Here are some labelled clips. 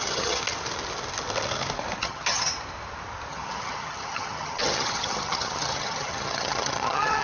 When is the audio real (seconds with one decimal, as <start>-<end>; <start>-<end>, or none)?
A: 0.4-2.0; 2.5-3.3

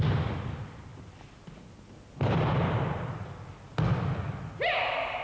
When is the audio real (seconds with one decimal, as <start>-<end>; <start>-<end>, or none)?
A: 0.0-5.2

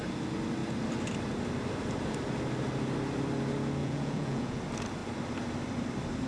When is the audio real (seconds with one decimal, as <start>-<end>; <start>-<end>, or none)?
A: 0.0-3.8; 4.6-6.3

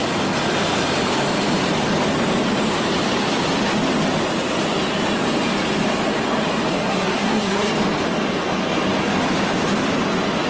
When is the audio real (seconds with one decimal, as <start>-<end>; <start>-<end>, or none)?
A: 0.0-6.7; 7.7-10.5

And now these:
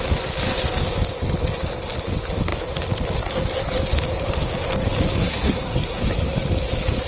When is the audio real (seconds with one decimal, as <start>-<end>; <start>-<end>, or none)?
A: 0.0-5.2; 6.0-7.1